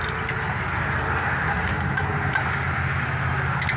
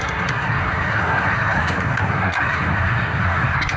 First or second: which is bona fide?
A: first